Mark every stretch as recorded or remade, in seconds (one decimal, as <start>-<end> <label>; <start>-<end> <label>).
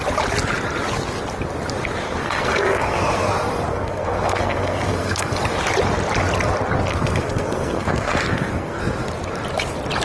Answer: 0.0-2.2 recorded; 2.2-3.3 remade; 3.3-3.7 recorded; 3.7-5.3 remade; 5.3-6.9 recorded; 6.9-8.8 remade; 8.8-10.0 recorded